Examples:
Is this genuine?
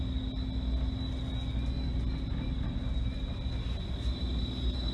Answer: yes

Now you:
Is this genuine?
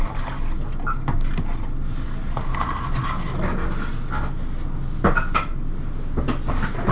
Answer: yes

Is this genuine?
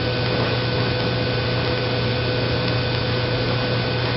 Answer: yes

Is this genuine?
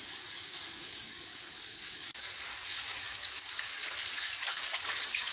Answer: no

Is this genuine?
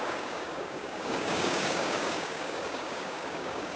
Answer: no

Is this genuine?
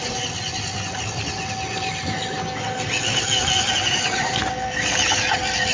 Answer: yes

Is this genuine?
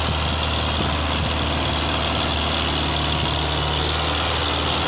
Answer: yes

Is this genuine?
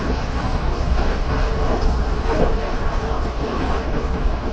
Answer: no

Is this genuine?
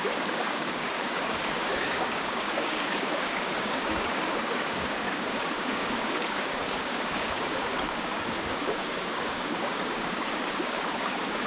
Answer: no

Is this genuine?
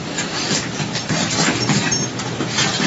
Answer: yes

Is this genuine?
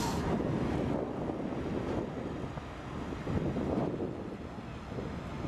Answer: yes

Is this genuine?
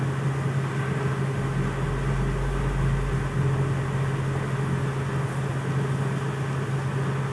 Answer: yes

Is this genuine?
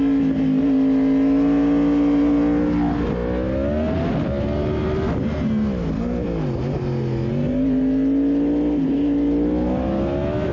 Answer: yes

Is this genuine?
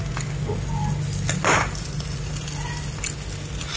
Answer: yes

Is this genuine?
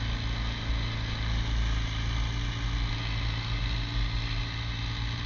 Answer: yes